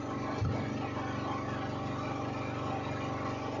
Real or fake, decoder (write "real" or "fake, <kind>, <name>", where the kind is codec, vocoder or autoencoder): real